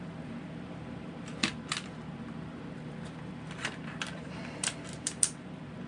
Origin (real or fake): fake